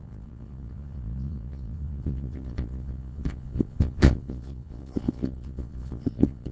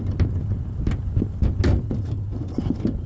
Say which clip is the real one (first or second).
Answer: second